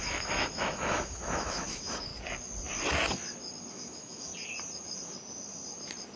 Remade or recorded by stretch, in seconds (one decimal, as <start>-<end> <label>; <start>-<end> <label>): 0.0-2.1 remade; 2.1-3.7 recorded; 3.7-4.3 remade; 4.3-6.2 recorded